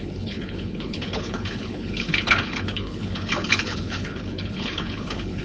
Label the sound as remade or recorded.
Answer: remade